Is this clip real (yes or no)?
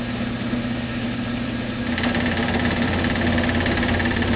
yes